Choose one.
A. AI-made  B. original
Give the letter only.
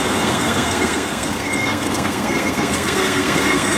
A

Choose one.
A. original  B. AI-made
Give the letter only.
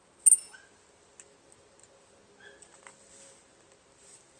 A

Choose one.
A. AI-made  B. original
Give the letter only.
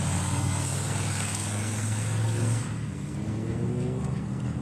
A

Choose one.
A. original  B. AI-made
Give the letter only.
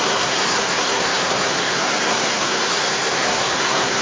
B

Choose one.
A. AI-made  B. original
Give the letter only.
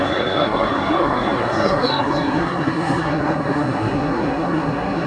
A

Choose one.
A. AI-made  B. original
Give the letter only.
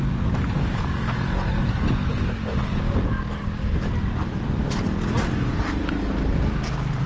B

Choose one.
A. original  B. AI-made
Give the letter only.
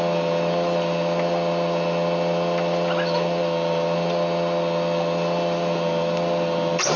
A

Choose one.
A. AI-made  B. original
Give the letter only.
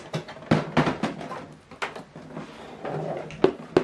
B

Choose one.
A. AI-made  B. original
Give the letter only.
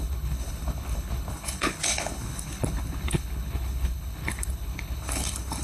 A